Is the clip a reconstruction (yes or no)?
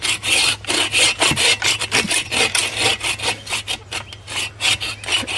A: no